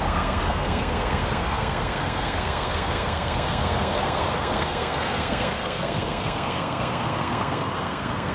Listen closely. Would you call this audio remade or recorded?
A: remade